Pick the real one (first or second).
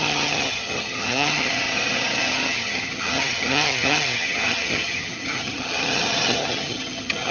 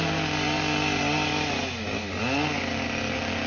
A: second